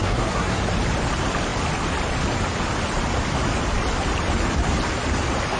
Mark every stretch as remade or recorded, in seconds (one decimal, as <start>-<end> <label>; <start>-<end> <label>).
0.0-0.6 remade; 0.6-5.6 recorded